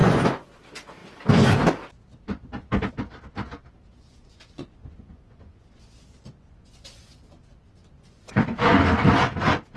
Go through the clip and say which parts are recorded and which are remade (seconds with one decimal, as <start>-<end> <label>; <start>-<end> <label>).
0.0-0.6 remade; 0.6-3.9 recorded; 3.9-8.8 remade; 8.8-9.8 recorded